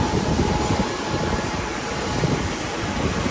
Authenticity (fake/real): fake